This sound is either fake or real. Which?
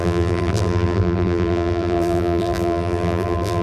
fake